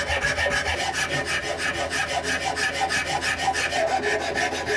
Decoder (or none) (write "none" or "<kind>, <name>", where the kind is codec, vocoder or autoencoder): none